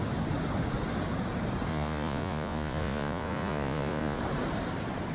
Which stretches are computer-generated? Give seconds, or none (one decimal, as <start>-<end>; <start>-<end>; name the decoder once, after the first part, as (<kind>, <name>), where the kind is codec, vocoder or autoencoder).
1.7-4.2 (vocoder, Vocos)